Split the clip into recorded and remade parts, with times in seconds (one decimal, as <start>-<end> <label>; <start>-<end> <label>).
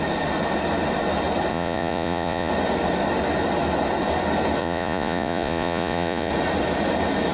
0.0-1.5 recorded; 1.5-2.5 remade; 2.5-4.6 recorded; 4.6-6.3 remade; 6.3-7.3 recorded